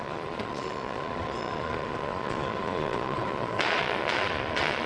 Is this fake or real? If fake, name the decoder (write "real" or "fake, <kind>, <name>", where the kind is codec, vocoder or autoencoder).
fake, vocoder, Vocos